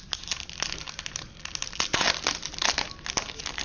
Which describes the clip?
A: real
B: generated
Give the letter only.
A